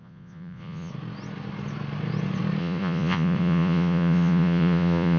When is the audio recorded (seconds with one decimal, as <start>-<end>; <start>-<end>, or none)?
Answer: 0.9-2.6